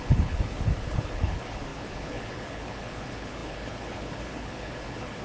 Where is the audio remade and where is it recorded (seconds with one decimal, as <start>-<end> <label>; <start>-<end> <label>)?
0.0-5.2 remade

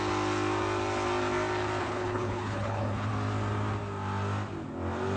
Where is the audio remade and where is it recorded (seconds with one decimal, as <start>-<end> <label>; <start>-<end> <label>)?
0.0-1.8 recorded; 1.8-3.1 remade; 3.1-5.2 recorded

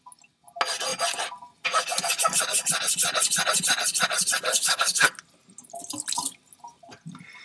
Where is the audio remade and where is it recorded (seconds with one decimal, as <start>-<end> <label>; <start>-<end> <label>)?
0.0-4.5 recorded; 4.5-5.1 remade; 5.1-7.4 recorded

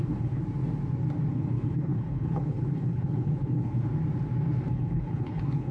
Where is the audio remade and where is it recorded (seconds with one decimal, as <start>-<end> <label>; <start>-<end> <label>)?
0.0-0.4 remade; 0.4-1.3 recorded; 1.3-3.9 remade; 3.9-4.7 recorded; 4.7-5.7 remade

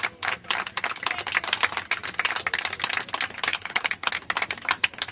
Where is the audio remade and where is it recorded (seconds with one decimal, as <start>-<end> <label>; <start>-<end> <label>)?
0.0-3.5 recorded; 3.5-4.1 remade; 4.1-5.1 recorded

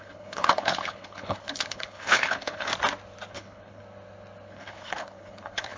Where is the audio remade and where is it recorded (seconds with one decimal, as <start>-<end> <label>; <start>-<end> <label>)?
0.0-2.7 remade; 2.7-3.3 recorded; 3.3-3.8 remade; 3.8-4.5 recorded; 4.5-5.8 remade